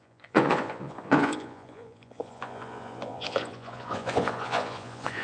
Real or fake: fake